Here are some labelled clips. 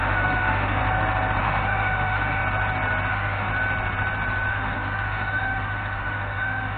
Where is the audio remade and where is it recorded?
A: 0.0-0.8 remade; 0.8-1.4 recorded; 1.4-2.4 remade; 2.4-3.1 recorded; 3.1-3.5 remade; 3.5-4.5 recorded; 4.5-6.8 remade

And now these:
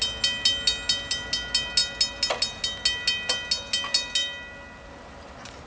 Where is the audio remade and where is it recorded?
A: 0.0-5.7 recorded